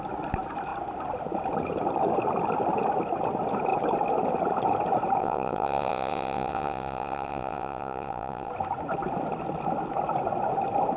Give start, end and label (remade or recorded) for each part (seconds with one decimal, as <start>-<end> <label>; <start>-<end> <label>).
0.0-5.2 recorded; 5.2-8.5 remade; 8.5-11.0 recorded